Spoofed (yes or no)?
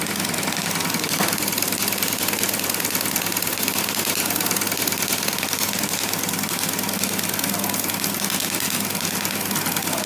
no